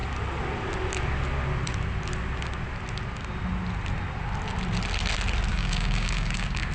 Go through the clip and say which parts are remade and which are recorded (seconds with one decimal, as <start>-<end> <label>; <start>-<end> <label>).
0.0-5.5 recorded; 5.5-6.7 remade